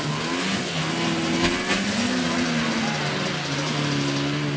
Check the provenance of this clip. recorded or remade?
recorded